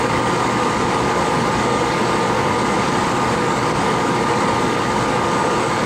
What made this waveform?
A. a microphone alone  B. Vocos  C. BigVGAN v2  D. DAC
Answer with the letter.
D